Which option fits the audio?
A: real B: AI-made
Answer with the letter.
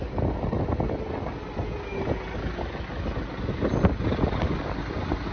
A